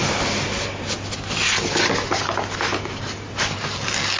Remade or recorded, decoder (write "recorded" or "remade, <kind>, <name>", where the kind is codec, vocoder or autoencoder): recorded